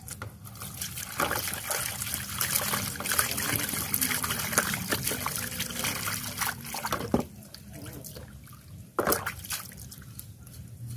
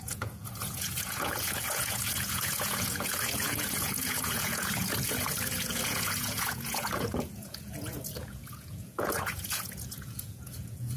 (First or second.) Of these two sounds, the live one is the first